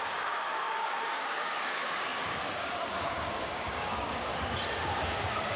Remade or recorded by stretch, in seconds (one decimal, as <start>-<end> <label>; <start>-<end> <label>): 0.0-4.3 remade; 4.3-4.8 recorded; 4.8-5.6 remade